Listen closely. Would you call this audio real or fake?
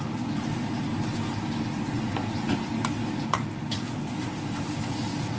real